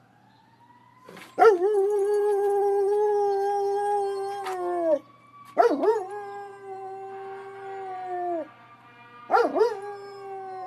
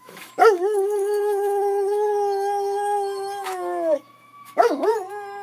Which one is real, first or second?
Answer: first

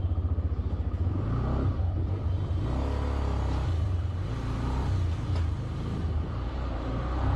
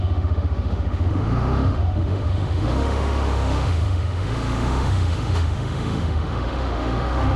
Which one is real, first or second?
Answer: first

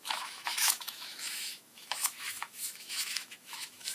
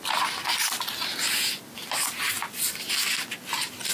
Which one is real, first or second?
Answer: second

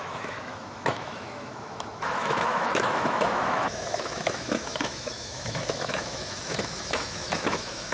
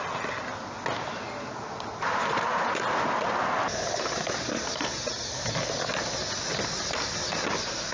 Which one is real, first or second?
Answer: second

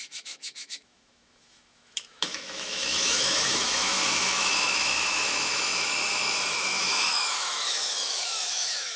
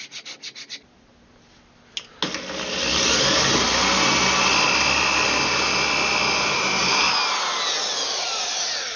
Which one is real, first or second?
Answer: second